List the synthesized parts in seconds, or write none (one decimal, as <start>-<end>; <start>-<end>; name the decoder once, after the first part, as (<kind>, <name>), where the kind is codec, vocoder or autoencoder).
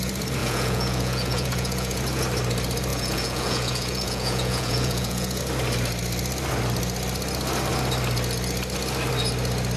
0.4-2.0 (vocoder, Vocos); 2.9-5.4